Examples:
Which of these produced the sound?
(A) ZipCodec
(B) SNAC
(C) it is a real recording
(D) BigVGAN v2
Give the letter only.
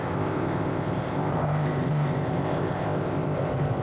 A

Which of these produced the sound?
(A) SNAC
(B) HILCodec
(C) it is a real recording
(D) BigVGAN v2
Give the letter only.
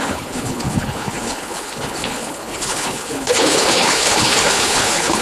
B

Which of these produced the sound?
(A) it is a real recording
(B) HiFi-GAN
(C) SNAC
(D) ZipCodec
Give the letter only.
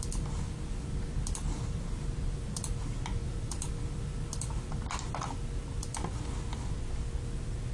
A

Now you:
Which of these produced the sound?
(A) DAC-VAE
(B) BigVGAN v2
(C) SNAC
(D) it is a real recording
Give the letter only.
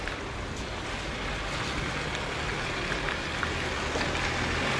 D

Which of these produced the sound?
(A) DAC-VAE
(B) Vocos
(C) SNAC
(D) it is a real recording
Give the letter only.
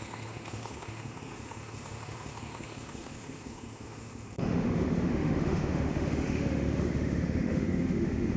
A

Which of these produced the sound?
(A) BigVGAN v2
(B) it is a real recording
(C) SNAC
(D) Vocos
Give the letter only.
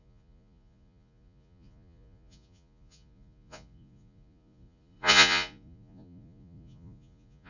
D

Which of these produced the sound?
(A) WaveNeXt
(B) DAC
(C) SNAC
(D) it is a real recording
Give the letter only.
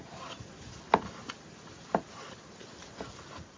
D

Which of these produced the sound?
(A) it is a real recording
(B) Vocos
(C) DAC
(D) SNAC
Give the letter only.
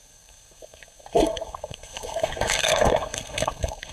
D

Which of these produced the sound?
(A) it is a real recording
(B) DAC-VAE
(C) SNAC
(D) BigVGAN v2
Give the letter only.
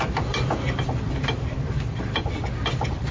A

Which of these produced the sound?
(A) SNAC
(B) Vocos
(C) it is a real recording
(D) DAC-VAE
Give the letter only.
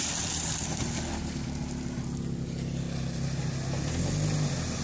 C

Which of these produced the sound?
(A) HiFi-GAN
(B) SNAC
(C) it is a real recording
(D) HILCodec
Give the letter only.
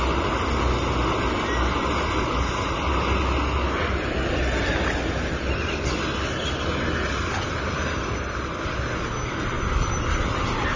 C